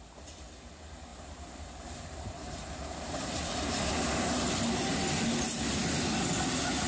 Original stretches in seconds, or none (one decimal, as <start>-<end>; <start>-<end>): 0.0-1.1; 4.6-6.9